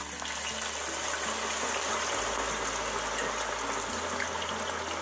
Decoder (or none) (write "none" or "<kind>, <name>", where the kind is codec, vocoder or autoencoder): none